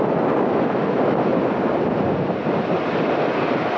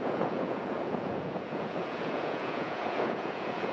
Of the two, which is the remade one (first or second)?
second